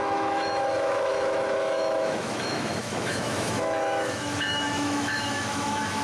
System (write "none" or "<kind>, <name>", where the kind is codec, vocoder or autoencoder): autoencoder, DAC-VAE